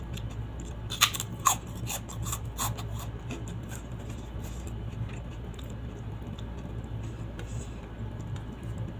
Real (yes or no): yes